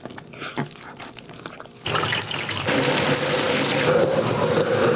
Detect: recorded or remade recorded